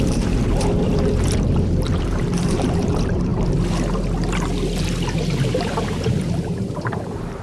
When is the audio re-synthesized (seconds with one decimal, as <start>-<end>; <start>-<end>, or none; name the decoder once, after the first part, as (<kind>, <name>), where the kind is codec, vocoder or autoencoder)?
0.0-3.3 (vocoder, BigVGAN v2); 6.2-7.4